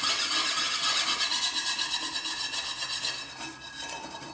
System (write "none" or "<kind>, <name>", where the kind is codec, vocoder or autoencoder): none